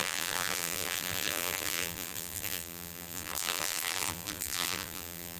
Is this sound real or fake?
fake